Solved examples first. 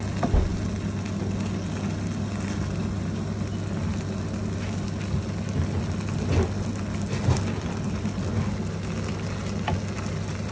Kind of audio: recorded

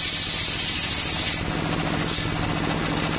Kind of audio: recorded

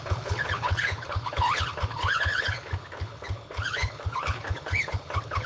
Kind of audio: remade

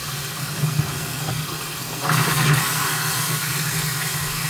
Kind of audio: remade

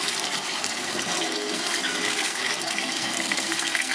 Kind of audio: remade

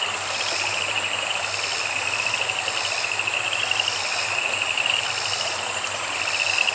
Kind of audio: recorded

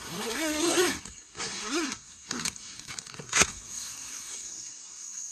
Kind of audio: remade